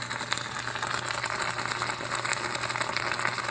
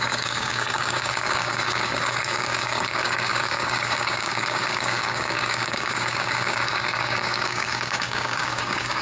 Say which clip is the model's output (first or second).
second